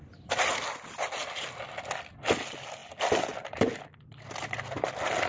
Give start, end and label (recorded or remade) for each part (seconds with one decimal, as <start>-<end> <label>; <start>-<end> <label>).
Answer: 0.0-5.3 recorded